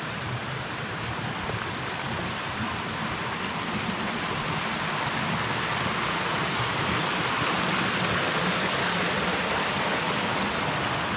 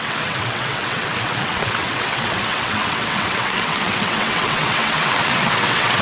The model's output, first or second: second